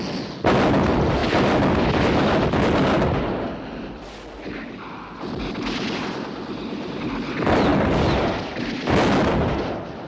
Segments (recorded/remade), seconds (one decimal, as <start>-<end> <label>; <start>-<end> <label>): 0.0-10.1 recorded